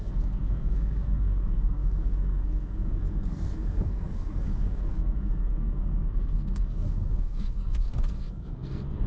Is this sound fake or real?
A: fake